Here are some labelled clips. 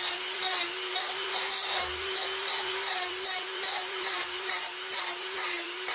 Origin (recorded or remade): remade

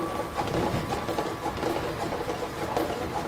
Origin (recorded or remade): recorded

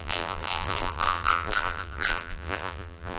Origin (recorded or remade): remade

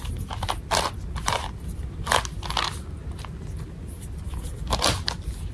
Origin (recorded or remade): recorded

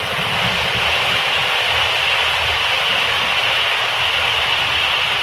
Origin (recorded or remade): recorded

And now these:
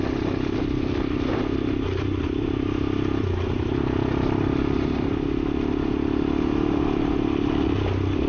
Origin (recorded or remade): recorded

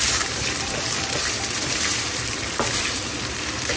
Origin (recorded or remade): remade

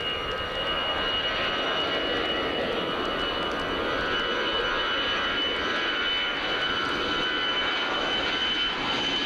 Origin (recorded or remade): recorded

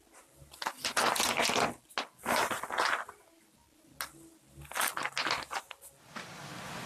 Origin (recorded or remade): recorded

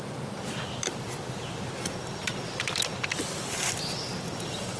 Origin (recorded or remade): remade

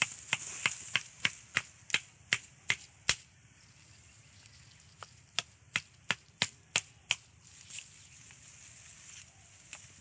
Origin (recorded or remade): recorded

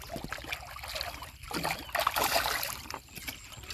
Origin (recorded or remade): recorded